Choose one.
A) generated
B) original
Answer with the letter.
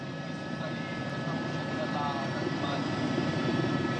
A